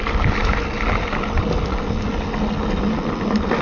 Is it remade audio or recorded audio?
recorded